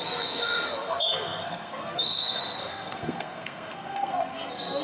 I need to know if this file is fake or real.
fake